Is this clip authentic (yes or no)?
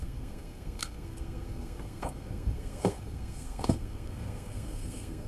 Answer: no